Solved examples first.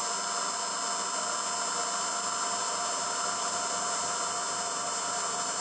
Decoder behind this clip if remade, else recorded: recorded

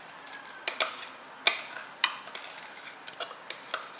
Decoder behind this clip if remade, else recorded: recorded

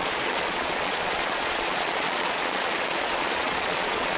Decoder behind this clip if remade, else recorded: remade, vocoder, Vocos